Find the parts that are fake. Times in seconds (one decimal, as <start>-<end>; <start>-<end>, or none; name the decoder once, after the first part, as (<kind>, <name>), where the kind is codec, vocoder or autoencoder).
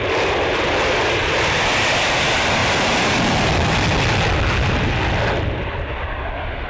0.0-2.6 (vocoder, BigVGAN v2)